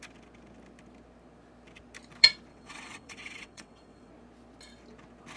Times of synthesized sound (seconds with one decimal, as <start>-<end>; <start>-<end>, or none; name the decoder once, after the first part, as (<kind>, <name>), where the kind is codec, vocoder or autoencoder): 2.5-4.1 (vocoder, WaveNeXt)